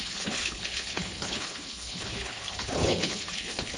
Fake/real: fake